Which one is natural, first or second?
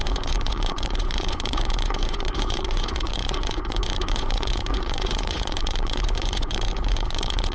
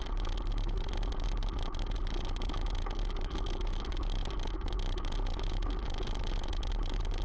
second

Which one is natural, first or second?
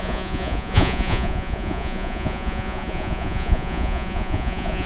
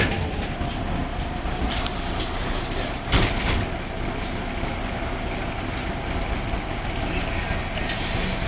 second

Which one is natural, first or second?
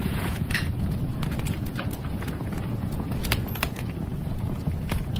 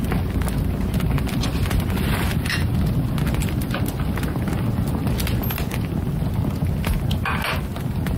second